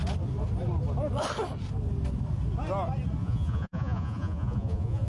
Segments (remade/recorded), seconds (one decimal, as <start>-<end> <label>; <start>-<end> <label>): 0.0-3.2 recorded; 3.2-5.1 remade